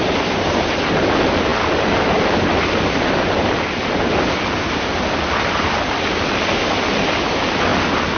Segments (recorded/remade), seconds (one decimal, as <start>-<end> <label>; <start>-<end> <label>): 0.0-1.5 recorded; 1.5-3.2 remade; 3.2-8.2 recorded